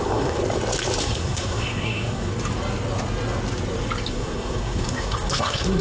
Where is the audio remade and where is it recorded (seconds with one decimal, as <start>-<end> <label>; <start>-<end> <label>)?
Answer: 0.0-0.4 remade; 0.4-1.0 recorded; 1.0-2.3 remade; 2.3-4.1 recorded; 4.1-5.8 remade